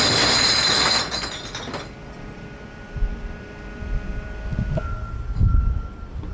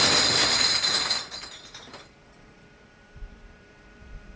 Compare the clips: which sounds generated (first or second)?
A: second